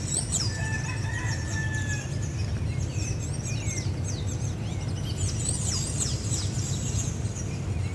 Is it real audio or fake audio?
real